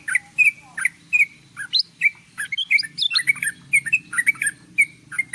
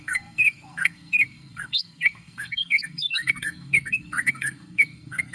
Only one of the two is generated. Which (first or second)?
second